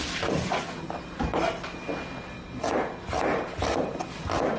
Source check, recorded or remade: recorded